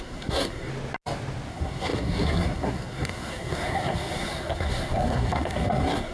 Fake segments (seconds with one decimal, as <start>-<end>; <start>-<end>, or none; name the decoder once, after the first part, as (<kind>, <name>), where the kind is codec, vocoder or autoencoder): 0.0-0.7 (codec, SNAC); 1.5-6.1

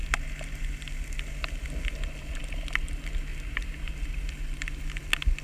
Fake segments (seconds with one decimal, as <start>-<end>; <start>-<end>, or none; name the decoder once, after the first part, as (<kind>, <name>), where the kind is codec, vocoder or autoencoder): 3.3-4.3 (vocoder, BigVGAN v2)

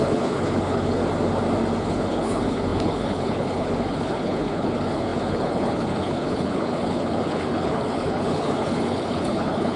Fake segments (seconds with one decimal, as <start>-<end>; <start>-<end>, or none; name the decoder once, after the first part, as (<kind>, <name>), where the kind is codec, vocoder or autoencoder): 0.0-1.0 (codec, HILCodec); 1.8-9.8

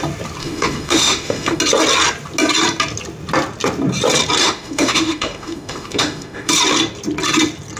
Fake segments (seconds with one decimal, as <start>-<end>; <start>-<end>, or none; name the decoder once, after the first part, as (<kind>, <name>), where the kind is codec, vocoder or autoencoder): 0.4-1.6 (autoencoder, DAC-VAE); 4.4-6.5

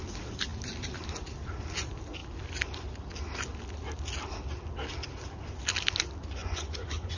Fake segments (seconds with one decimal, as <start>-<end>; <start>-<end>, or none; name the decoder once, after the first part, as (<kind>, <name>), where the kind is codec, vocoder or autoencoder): 6.4-7.2 (vocoder, Vocos)

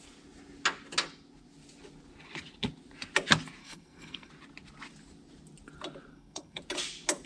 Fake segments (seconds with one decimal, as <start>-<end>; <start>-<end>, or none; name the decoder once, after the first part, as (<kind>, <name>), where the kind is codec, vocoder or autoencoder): 3.6-4.3 (codec, SNAC); 6.1-6.6

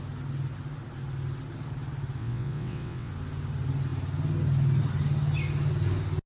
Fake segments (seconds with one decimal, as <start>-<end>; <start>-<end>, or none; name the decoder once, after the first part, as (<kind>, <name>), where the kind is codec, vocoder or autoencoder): 2.2-3.1 (vocoder, WaveNeXt)

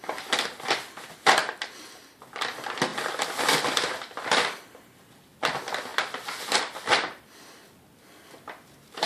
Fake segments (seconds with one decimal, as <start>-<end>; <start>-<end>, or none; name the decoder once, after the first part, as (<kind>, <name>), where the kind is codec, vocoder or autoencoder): 1.4-2.2 (vocoder, BigVGAN v2); 2.9-5.0; 5.9-7.4